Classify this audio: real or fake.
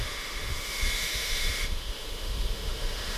fake